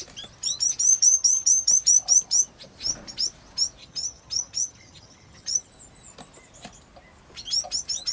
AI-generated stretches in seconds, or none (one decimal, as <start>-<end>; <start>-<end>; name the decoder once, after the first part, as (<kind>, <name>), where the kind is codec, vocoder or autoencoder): 0.9-1.7 (vocoder, HiFi-GAN); 3.8-5.7